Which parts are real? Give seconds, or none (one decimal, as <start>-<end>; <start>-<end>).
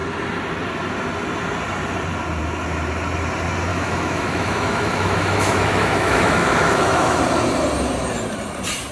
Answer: 0.0-3.7; 7.2-8.9